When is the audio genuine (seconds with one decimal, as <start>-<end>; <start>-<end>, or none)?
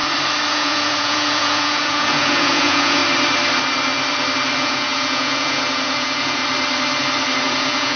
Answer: 0.0-0.5; 3.0-4.6; 6.4-7.4